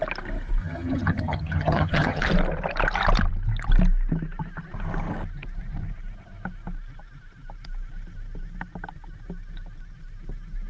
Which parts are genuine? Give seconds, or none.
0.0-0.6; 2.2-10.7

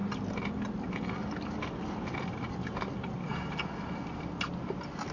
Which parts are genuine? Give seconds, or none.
0.0-5.1

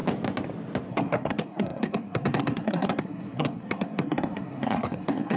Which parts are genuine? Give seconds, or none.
0.0-0.9

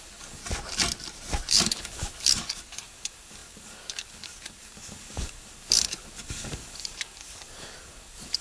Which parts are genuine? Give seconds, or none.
0.4-1.5

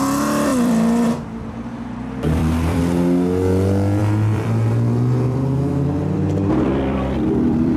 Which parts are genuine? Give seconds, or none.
0.0-0.5; 2.8-4.0